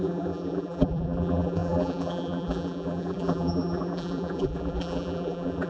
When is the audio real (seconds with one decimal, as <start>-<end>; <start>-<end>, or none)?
none